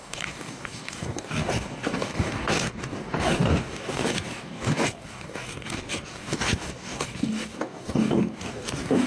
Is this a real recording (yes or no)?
no